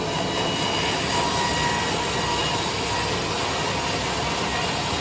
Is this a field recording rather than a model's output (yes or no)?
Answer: yes